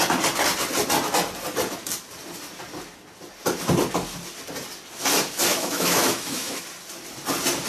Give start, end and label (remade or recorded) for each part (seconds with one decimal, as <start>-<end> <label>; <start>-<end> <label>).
0.0-5.5 recorded; 5.5-6.6 remade; 6.6-7.7 recorded